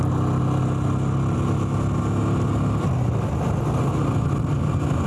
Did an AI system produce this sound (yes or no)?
no